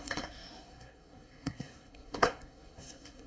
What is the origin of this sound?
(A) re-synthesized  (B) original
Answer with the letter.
A